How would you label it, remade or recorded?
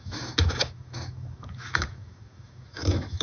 remade